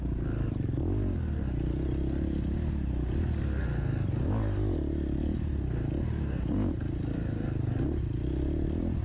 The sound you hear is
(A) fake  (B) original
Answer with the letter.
B